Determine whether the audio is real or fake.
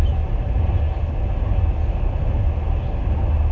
real